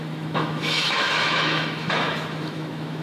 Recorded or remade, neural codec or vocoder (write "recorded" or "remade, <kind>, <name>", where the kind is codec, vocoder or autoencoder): remade, autoencoder, DAC-VAE